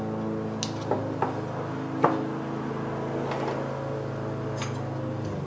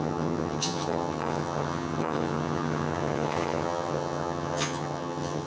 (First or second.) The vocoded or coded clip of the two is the second